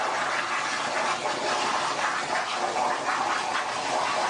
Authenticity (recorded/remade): recorded